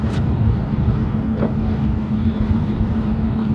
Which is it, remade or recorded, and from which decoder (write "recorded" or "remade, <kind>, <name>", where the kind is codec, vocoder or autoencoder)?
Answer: remade, codec, DAC